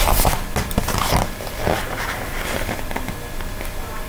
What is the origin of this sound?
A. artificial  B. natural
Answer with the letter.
B